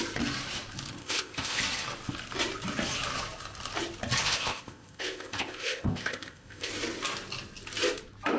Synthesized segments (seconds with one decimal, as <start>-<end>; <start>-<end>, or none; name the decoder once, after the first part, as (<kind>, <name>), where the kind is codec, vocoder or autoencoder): 1.0-1.6 (codec, ZipCodec); 4.2-6.7